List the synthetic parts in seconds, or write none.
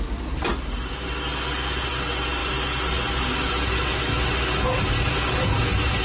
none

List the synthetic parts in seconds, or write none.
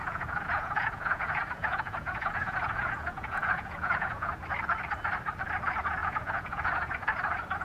0.0-4.3; 6.0-7.1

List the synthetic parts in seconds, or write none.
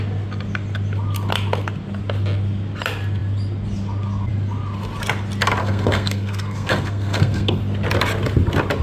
5.6-7.6